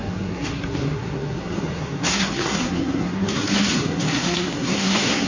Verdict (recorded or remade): remade